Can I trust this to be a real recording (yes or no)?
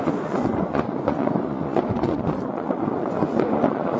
no